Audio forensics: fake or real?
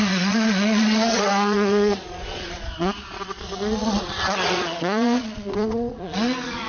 fake